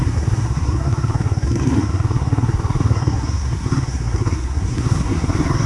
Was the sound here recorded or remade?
remade